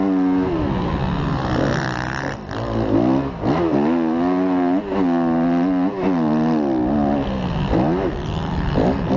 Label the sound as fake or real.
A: real